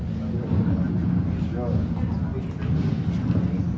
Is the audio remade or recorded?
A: recorded